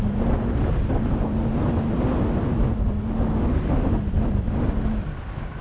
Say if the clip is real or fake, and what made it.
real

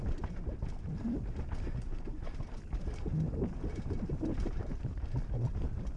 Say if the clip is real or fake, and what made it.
real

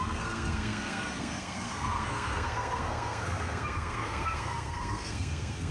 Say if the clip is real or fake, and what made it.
fake, codec, SNAC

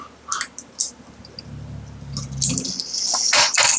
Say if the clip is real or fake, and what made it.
real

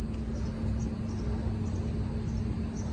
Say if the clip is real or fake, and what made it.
real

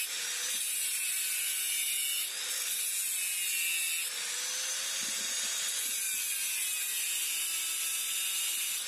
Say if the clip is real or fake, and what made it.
real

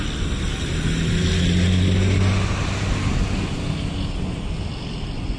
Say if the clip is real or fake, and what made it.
real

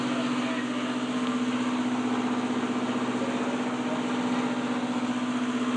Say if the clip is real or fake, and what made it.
real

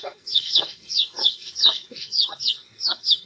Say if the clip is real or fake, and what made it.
fake, codec, SNAC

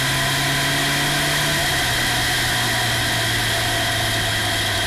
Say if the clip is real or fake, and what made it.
real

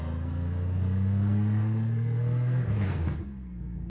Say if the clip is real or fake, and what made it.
fake, codec, SNAC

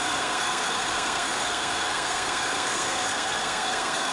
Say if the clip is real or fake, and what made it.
fake, codec, SNAC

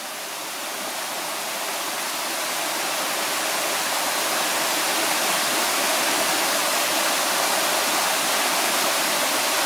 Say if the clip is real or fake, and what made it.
real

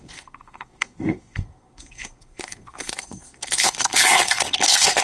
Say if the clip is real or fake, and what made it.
fake, codec, SNAC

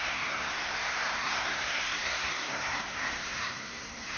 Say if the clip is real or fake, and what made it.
fake, codec, SNAC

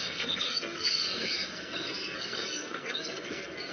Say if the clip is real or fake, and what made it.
fake, codec, SNAC